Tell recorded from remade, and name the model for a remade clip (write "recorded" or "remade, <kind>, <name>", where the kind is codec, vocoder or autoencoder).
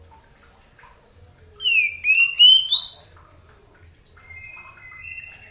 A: recorded